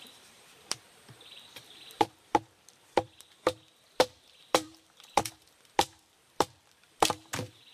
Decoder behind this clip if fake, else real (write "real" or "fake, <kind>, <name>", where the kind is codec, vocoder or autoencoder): fake, vocoder, BigVGAN v2